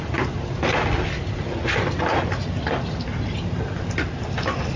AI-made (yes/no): no